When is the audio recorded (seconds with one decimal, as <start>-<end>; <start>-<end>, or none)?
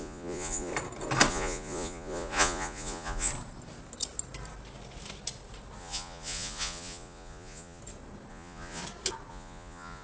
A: 0.7-1.3; 3.3-5.8; 7.8-8.3; 8.8-9.3